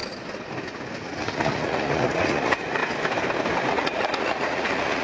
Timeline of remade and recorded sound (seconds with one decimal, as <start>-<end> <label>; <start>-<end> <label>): 0.0-1.0 recorded; 1.0-2.8 remade; 2.8-3.7 recorded; 3.7-5.0 remade